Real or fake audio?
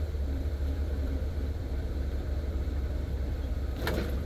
fake